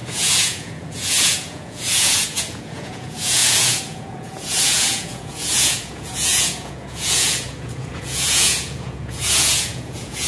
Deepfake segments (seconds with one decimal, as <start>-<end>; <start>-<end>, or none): 0.0-10.3